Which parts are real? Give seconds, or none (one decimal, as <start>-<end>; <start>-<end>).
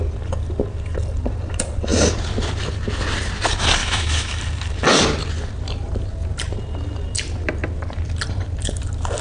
0.0-3.8; 4.4-9.2